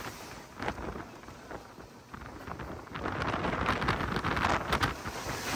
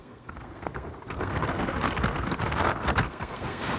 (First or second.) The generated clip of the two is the second